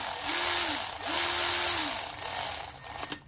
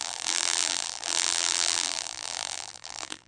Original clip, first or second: first